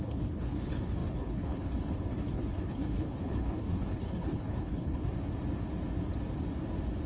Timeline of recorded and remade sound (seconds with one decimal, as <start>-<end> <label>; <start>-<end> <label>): 0.0-5.1 remade; 5.1-7.1 recorded